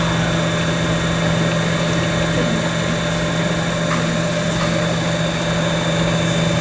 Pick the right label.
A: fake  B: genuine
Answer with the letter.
B